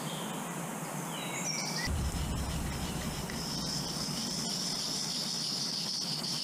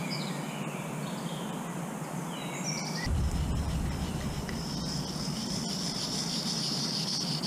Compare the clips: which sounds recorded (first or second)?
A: first